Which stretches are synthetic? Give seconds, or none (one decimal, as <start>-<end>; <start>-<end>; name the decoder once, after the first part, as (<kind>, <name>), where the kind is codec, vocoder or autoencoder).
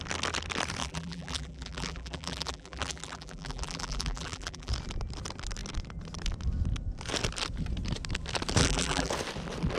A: 0.8-4.7 (vocoder, BigVGAN v2); 8.6-9.1